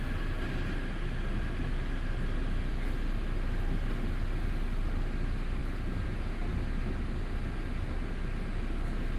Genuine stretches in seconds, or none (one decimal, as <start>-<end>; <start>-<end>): 0.0-9.2